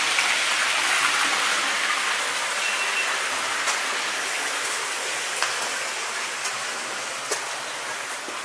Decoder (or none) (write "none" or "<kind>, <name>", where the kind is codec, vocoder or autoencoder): none